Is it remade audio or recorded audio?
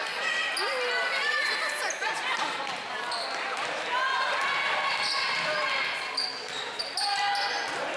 recorded